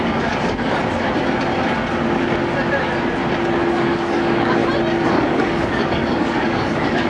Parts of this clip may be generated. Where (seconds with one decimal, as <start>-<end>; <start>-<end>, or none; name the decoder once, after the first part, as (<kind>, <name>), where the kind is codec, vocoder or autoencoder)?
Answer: 0.0-0.8 (codec, DAC); 3.7-4.6; 5.1-7.1